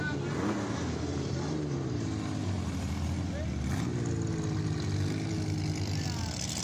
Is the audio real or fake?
real